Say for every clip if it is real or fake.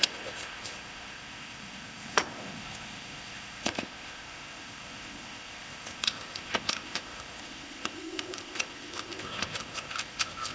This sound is fake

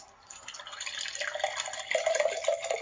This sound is real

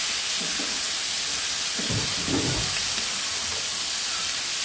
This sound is real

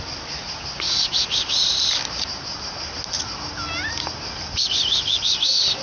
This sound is real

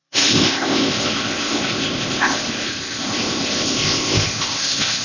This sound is fake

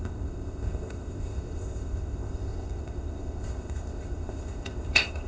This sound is fake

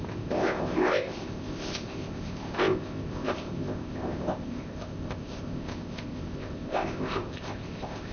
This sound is fake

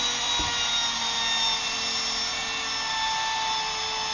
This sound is real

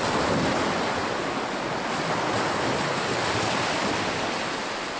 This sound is real